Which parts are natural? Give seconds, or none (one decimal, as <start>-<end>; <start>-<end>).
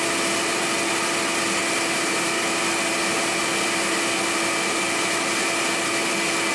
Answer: 0.0-6.5